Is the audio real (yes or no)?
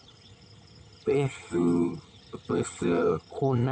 no